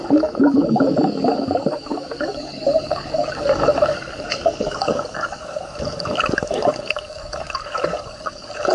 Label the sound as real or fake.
fake